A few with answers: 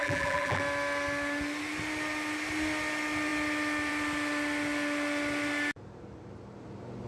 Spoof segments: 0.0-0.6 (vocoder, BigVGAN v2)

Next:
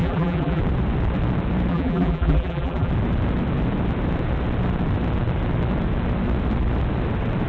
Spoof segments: 0.0-0.6 (vocoder, BigVGAN v2); 1.7-2.9